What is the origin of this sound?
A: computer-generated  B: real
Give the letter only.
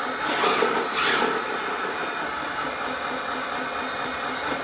B